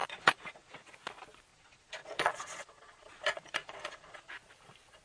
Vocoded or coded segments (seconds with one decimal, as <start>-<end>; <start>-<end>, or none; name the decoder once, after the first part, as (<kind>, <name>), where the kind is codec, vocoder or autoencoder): 0.0-0.9 (vocoder, Vocos); 1.5-4.3